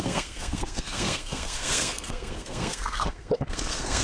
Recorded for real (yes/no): no